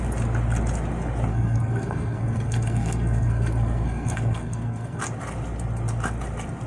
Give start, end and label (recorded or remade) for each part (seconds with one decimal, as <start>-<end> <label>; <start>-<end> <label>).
0.0-1.3 recorded; 1.3-5.0 remade; 5.0-6.7 recorded